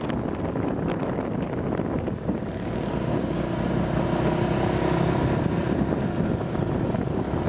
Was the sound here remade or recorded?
recorded